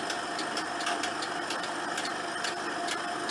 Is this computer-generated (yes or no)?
no